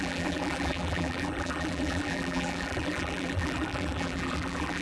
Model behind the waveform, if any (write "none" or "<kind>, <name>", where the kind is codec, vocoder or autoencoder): vocoder, BigVGAN v2